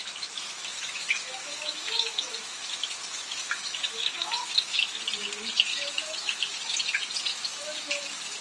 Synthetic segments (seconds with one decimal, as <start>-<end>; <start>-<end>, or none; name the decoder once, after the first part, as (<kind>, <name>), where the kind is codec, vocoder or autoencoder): 0.0-5.0 (autoencoder, DAC-VAE); 5.7-6.5; 7.3-8.4